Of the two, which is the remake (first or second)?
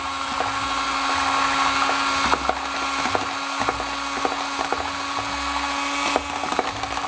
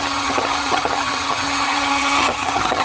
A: second